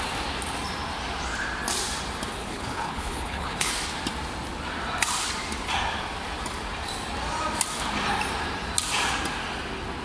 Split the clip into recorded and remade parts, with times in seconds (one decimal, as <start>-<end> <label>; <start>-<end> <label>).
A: 0.0-2.4 recorded; 2.4-3.7 remade; 3.7-10.0 recorded